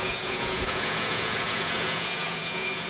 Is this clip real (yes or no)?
no